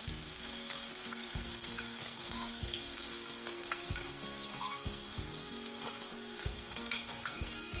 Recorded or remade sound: remade